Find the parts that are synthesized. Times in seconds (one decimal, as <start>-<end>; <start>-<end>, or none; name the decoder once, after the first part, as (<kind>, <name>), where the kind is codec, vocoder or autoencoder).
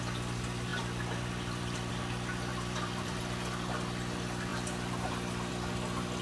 0.7-1.9 (vocoder, BigVGAN v2); 2.5-3.2; 4.5-5.5